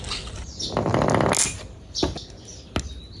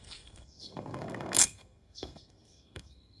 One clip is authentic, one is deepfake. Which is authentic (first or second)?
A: first